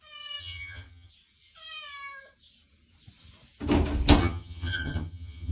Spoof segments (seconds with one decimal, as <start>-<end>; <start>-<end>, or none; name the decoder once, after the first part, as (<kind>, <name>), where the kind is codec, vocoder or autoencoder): 0.4-1.1 (vocoder, HiFi-GAN); 4.2-5.5